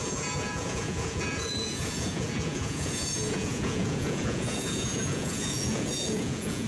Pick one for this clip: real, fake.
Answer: fake